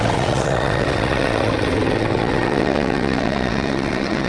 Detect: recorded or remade remade